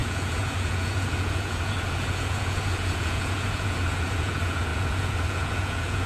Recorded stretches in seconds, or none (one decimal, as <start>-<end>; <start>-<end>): none